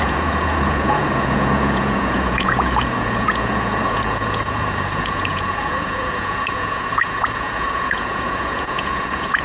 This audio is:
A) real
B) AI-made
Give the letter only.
B